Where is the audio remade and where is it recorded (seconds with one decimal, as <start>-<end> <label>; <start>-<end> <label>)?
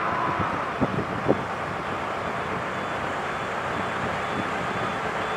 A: 0.0-5.4 recorded